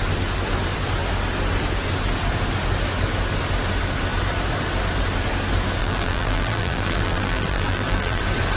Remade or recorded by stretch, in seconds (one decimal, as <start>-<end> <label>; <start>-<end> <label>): 0.0-5.8 recorded; 5.8-8.2 remade; 8.2-8.6 recorded